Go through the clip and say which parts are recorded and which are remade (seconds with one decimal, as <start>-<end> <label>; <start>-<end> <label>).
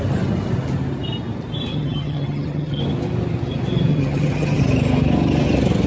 0.0-1.7 recorded; 1.7-2.8 remade; 2.8-3.9 recorded; 3.9-4.6 remade; 4.6-5.9 recorded